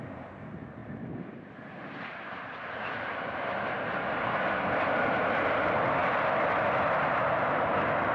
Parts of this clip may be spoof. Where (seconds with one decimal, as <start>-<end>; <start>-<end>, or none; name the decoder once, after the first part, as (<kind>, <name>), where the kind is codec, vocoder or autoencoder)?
0.8-1.6 (vocoder, BigVGAN v2)